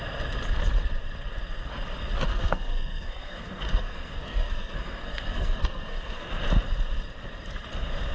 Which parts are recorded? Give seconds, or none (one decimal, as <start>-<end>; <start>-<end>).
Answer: 0.0-2.3; 6.3-8.1